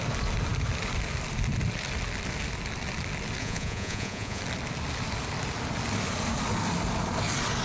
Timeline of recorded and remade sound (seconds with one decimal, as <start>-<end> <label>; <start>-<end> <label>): 0.0-3.4 recorded; 3.4-4.4 remade; 4.4-7.6 recorded